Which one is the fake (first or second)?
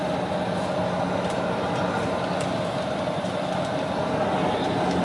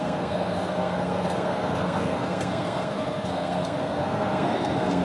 second